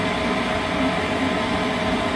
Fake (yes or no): no